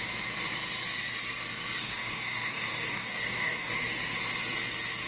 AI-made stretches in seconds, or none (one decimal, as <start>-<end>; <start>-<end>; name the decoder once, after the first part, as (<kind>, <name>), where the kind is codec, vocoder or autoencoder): 1.8-3.7 (codec, DAC)